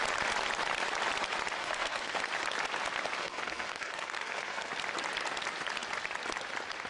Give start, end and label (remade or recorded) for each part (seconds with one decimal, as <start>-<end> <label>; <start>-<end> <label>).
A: 0.0-1.6 recorded; 1.6-2.2 remade; 2.2-3.2 recorded; 3.2-4.7 remade; 4.7-6.9 recorded